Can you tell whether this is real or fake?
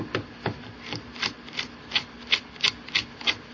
real